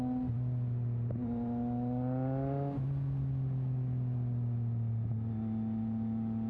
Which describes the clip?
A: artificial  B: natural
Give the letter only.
B